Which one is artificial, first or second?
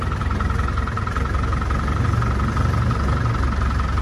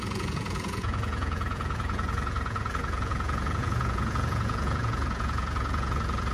second